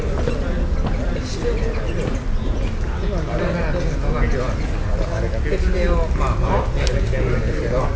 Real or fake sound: real